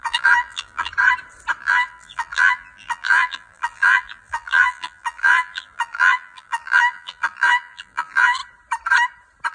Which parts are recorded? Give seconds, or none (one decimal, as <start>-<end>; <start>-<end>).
0.9-1.6; 8.4-9.5